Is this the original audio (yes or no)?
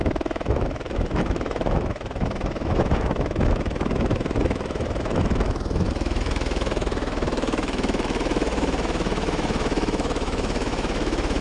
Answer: no